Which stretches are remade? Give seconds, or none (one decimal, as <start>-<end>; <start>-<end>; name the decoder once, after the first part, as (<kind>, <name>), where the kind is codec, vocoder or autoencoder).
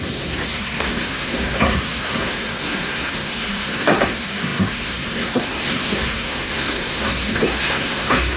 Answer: 0.0-8.4 (codec, SNAC)